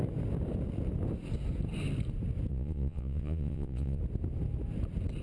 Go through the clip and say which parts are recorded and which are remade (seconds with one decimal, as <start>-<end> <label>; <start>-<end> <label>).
0.0-2.5 recorded; 2.5-4.0 remade; 4.0-5.2 recorded